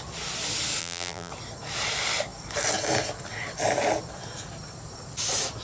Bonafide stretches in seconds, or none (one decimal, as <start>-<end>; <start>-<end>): 0.0-0.8; 1.3-5.6